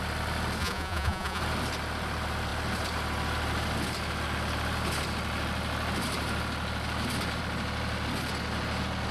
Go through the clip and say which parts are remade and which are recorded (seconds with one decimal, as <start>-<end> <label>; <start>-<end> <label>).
0.0-0.6 recorded; 0.6-1.4 remade; 1.4-9.1 recorded